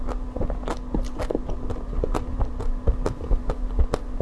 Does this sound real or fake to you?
real